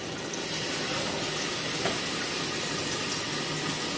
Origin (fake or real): real